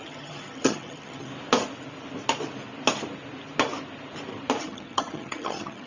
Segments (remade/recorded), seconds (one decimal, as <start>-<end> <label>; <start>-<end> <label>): 0.0-1.3 remade; 1.3-4.6 recorded; 4.6-5.9 remade